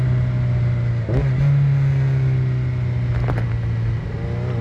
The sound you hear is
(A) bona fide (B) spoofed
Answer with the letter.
A